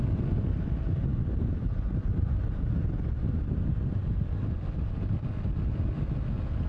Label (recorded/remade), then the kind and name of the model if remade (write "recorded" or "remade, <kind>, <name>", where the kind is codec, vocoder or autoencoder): recorded